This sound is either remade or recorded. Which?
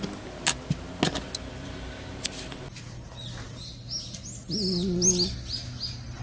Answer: recorded